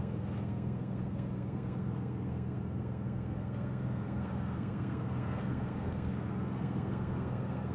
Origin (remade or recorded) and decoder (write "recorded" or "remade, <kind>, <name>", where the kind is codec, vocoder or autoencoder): remade, codec, SNAC